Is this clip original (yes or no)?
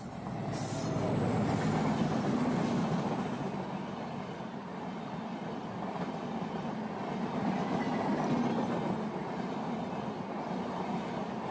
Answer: yes